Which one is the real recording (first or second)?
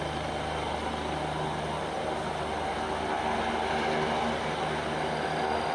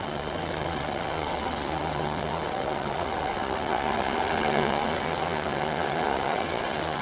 first